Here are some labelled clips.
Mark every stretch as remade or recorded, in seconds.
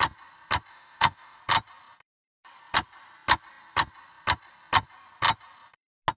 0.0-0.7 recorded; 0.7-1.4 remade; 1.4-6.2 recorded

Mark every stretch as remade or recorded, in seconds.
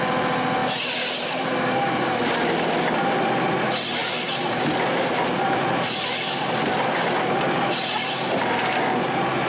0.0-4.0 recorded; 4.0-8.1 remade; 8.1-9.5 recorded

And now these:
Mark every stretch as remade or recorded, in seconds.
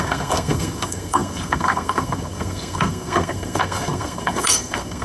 0.0-5.0 remade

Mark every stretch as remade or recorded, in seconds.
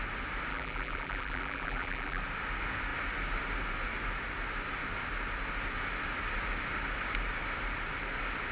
0.0-0.5 recorded; 0.5-2.2 remade; 2.2-8.5 recorded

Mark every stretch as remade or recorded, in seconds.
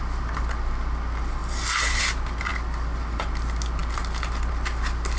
0.0-5.2 recorded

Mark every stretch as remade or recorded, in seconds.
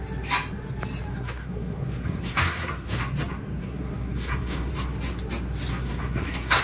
0.0-1.1 recorded; 1.1-3.0 remade; 3.0-3.6 recorded; 3.6-4.7 remade; 4.7-5.7 recorded; 5.7-6.6 remade